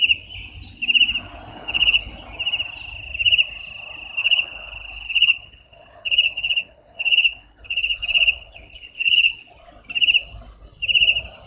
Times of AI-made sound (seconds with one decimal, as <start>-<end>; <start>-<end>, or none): 1.5-2.1; 4.2-9.5